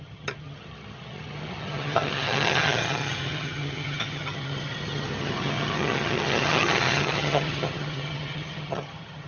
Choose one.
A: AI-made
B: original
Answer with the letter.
A